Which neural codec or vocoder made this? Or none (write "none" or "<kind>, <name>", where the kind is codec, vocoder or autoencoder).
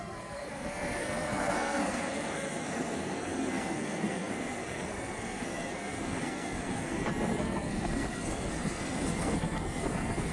codec, SNAC